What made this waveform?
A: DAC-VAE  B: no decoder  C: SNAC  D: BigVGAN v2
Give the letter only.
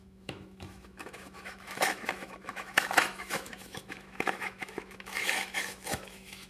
A